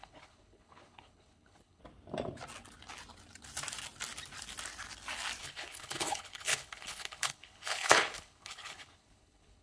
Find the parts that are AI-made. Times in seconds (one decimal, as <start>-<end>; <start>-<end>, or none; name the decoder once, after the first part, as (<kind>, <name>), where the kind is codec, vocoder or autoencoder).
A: 0.0-1.8 (codec, HILCodec); 5.4-9.6